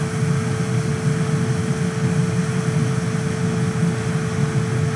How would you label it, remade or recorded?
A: recorded